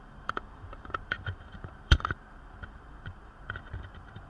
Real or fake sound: fake